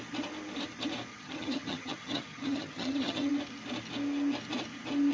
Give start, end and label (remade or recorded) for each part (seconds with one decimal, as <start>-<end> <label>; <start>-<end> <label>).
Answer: 0.0-1.1 recorded; 1.1-3.3 remade; 3.3-5.1 recorded